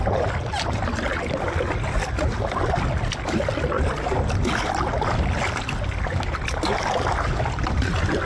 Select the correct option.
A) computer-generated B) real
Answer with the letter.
B